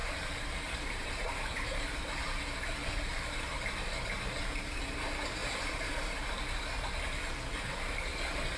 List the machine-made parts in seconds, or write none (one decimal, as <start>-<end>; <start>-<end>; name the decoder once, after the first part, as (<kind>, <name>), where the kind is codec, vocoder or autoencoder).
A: 0.0-4.8 (vocoder, BigVGAN v2); 5.4-6.3